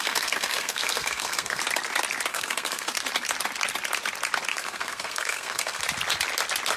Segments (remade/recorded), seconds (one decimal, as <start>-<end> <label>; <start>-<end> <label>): 0.0-1.6 remade; 1.6-2.3 recorded; 2.3-2.9 remade; 2.9-4.5 recorded; 4.5-5.8 remade; 5.8-6.8 recorded